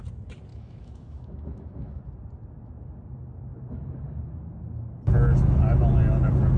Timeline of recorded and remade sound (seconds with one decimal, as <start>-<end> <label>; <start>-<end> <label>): 0.0-0.5 recorded; 0.5-2.0 remade; 2.0-6.6 recorded